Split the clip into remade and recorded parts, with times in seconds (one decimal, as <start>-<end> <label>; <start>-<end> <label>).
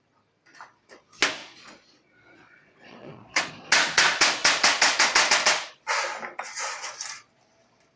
0.0-1.4 recorded; 1.4-3.5 remade; 3.5-8.0 recorded